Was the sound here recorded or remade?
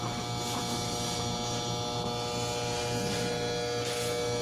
recorded